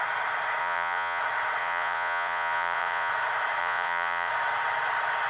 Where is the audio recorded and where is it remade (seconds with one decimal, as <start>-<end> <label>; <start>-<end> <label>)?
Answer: 0.0-0.6 recorded; 0.6-1.2 remade; 1.2-1.6 recorded; 1.6-3.1 remade; 3.1-3.6 recorded; 3.6-4.3 remade; 4.3-5.3 recorded